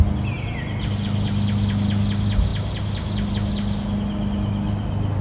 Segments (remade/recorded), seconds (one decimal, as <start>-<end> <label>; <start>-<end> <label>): 0.0-5.2 recorded